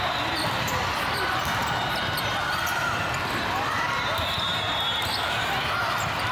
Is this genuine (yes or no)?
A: no